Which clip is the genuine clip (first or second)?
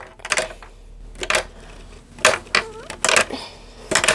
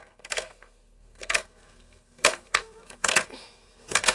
first